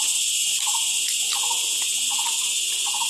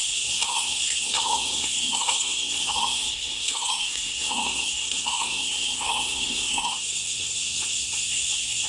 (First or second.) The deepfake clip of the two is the second